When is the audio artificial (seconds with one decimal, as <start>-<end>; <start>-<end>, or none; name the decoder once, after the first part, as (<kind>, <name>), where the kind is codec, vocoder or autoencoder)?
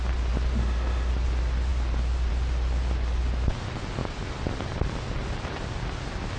0.6-1.1 (autoencoder, DAC-VAE)